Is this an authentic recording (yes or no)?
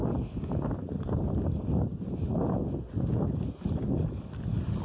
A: yes